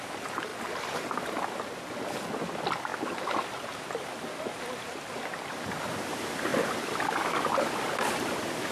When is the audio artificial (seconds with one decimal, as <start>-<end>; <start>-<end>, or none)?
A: none